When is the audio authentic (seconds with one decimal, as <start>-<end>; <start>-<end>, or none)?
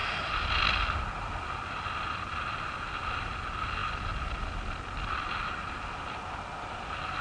0.0-7.2